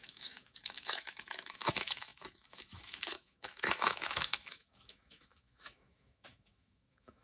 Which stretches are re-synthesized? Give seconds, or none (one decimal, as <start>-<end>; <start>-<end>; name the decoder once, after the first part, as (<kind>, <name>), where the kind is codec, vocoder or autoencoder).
0.0-7.2 (autoencoder, DAC-VAE)